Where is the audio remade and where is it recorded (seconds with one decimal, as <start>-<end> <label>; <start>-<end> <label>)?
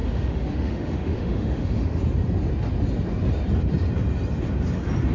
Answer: 0.0-2.0 remade; 2.0-5.1 recorded